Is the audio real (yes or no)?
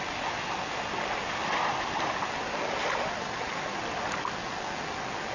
yes